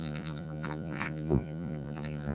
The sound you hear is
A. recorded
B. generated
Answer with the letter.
B